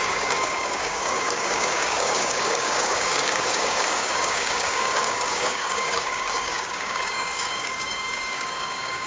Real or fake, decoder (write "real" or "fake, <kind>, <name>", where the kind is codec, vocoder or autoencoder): fake, codec, DAC